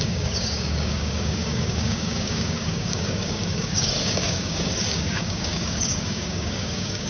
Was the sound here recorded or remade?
remade